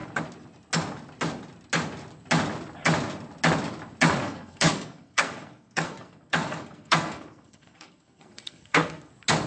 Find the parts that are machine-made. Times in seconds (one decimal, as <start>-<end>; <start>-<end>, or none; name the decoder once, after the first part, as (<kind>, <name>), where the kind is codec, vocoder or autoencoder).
4.2-9.1 (codec, SNAC)